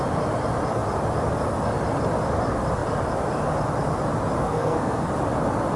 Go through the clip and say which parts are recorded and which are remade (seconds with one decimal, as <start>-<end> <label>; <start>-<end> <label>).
0.0-4.4 recorded; 4.4-5.1 remade; 5.1-5.8 recorded